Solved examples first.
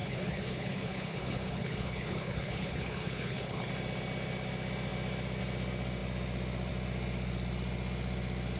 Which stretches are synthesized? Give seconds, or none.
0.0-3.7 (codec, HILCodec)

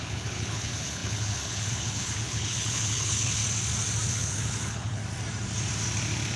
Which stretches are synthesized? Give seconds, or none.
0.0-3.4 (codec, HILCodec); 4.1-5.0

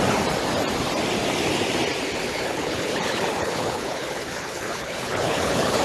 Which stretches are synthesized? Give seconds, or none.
2.2-5.8 (codec, HILCodec)

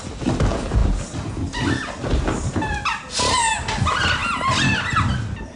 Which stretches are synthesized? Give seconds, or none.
none

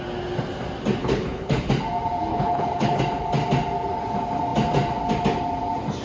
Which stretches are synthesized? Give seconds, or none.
1.0-1.7 (codec, HILCodec); 2.3-3.0

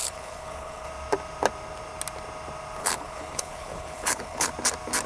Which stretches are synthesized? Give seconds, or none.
0.0-0.9 (codec, HILCodec); 2.8-4.5

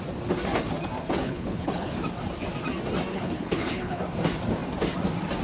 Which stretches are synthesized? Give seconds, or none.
1.2-1.9 (codec, HILCodec); 3.1-4.0